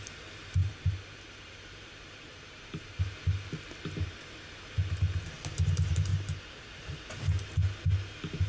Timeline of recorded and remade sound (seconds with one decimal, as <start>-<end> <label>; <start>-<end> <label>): 0.0-0.6 recorded; 0.6-3.0 remade; 3.0-6.1 recorded; 6.1-6.9 remade; 6.9-8.5 recorded